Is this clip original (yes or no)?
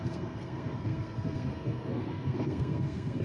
no